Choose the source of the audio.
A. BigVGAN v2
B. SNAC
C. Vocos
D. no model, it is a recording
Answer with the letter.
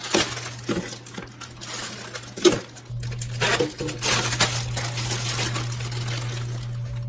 D